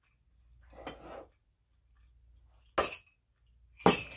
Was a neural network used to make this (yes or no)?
no